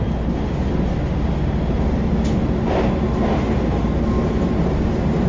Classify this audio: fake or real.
real